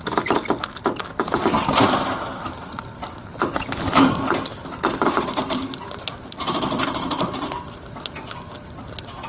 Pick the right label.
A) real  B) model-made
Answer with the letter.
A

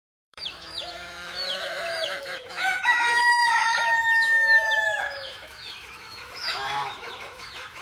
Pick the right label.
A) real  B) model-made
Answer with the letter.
B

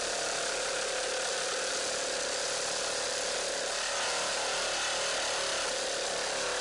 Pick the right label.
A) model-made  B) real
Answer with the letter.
B